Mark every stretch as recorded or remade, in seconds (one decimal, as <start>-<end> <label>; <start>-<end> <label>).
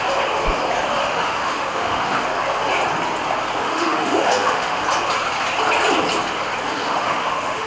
0.0-1.0 recorded; 1.0-2.2 remade; 2.2-3.6 recorded; 3.6-4.8 remade; 4.8-6.7 recorded; 6.7-7.7 remade